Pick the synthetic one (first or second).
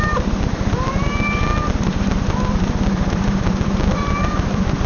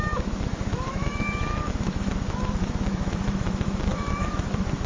second